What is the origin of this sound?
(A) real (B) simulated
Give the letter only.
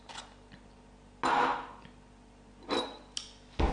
A